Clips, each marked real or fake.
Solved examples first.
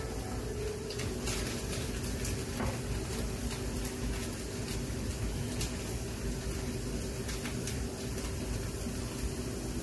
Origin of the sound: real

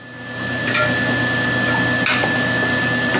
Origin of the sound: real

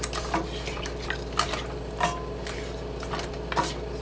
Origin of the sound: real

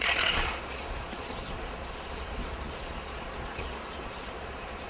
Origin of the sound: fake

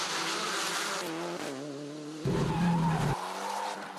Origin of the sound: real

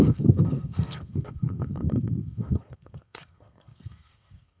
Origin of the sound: fake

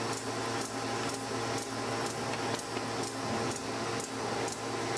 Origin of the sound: real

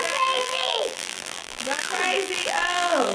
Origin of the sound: fake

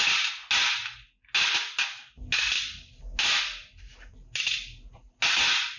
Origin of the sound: real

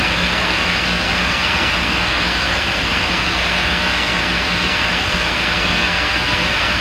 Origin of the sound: fake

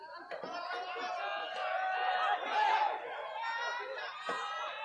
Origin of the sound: real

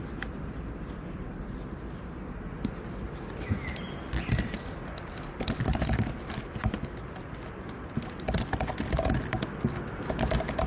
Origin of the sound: real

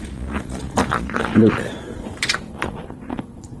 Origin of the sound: fake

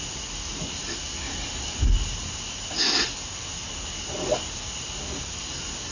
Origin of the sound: real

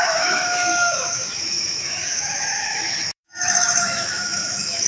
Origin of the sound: fake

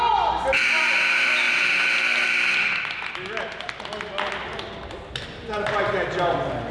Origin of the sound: real